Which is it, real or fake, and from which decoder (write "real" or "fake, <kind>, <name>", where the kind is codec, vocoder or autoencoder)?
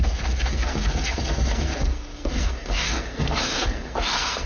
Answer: fake, codec, SNAC